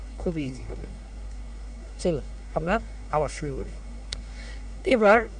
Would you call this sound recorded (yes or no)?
no